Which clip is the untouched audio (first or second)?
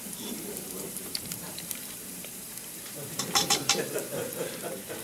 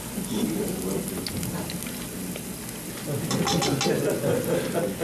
second